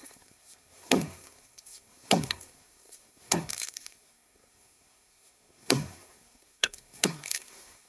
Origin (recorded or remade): remade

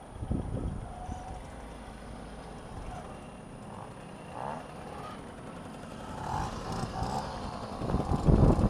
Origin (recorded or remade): recorded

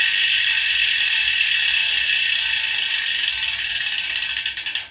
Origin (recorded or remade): recorded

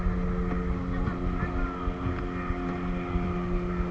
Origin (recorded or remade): recorded